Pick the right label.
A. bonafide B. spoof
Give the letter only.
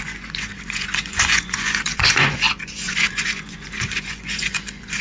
B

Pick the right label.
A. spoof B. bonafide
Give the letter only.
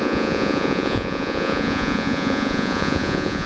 A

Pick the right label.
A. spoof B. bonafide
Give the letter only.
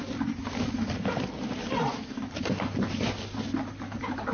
B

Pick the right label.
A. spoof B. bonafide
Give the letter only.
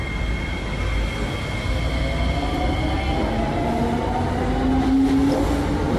B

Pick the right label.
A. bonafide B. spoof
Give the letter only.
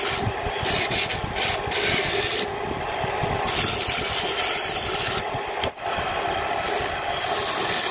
A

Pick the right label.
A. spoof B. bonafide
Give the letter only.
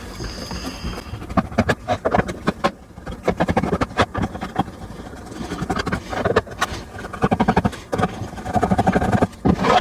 B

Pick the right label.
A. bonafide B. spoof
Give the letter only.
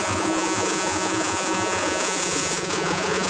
B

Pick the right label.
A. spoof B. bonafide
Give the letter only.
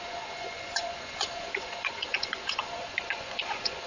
A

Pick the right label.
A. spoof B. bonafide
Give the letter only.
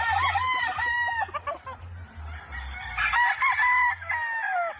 B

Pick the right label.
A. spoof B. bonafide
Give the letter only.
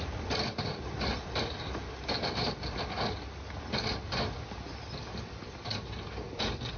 B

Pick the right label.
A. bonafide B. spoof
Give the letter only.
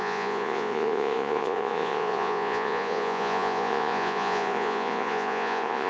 B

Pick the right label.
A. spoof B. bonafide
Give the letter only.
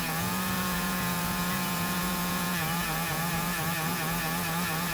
A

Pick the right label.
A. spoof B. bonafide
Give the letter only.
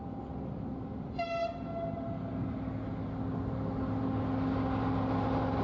B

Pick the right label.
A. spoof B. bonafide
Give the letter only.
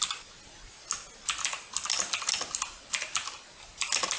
B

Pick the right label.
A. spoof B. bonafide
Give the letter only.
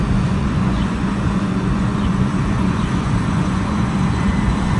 A